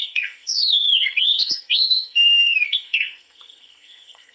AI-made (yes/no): yes